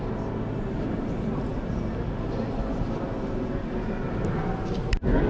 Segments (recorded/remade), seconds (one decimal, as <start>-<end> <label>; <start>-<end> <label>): 0.0-5.3 recorded